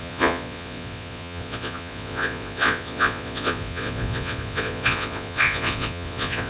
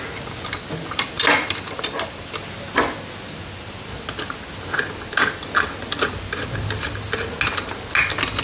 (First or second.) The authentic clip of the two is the second